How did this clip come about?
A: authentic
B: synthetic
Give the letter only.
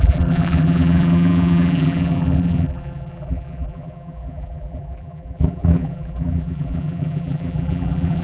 B